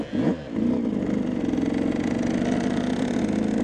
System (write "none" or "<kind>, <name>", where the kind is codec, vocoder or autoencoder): none